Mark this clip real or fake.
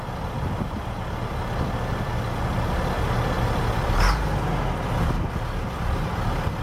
real